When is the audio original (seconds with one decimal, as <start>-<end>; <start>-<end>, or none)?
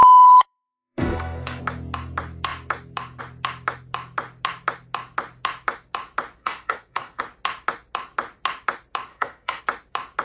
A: 1.6-6.4; 7.2-9.1; 9.6-10.2